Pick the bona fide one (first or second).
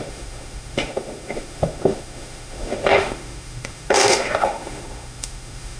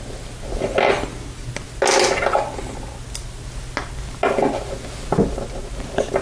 second